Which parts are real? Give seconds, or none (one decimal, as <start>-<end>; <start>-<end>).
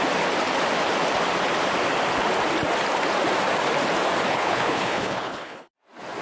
0.0-4.3; 5.7-6.2